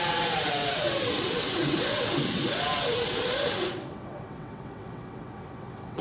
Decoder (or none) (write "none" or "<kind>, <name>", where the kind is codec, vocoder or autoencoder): vocoder, WaveNeXt